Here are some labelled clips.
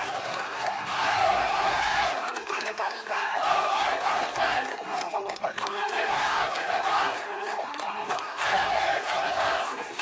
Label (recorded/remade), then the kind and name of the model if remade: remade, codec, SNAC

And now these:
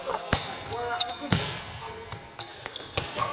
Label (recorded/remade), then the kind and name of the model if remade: remade, codec, SNAC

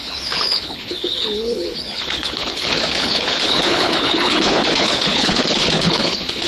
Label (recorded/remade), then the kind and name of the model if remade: remade, codec, HILCodec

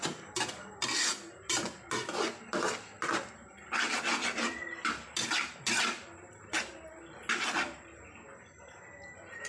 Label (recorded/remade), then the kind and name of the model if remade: recorded